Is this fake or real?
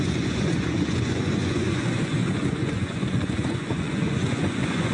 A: fake